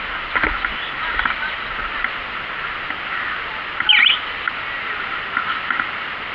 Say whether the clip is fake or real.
real